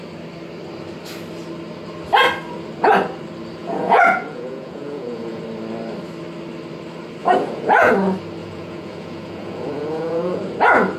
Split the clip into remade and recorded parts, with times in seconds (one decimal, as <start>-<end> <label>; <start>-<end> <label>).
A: 0.0-3.6 recorded; 3.6-5.4 remade; 5.4-7.2 recorded; 7.2-7.9 remade; 7.9-8.4 recorded; 8.4-10.4 remade; 10.4-11.0 recorded